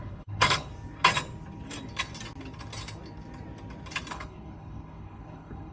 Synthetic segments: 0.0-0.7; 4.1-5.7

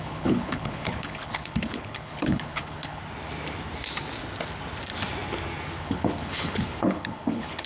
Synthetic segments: 0.0-3.0; 5.8-7.7

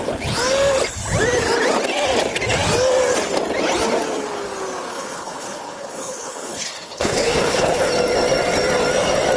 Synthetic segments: 4.9-7.9

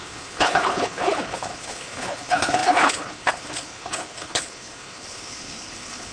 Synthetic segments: 0.0-6.1

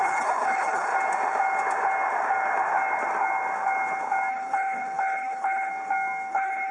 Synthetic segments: 0.0-0.9; 4.3-5.7; 6.3-6.7